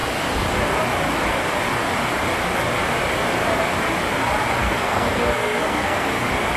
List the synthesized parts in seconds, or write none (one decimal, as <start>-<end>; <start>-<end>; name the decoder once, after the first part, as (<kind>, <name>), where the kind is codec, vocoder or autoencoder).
4.6-6.1 (codec, SNAC)